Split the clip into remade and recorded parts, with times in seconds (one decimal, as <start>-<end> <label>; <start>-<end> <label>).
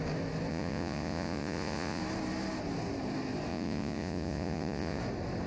0.0-0.5 recorded; 0.5-2.0 remade; 2.0-3.5 recorded; 3.5-5.0 remade; 5.0-5.5 recorded